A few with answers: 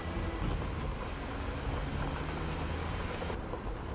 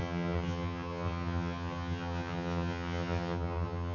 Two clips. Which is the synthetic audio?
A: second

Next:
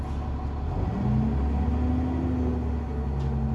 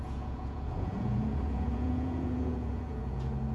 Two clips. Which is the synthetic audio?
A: second